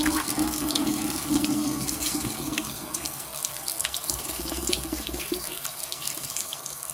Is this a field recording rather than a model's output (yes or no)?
no